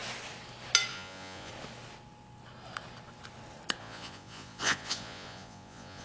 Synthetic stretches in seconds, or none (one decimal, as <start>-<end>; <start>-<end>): 0.9-1.5; 3.8-6.0